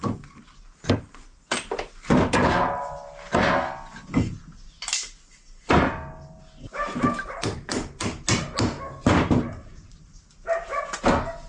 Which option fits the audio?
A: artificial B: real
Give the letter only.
B